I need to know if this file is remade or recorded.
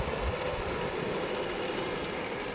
recorded